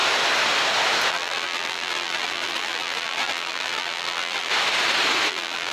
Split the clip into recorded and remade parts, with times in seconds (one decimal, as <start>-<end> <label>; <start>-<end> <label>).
0.0-1.1 recorded; 1.1-4.5 remade; 4.5-5.3 recorded; 5.3-5.7 remade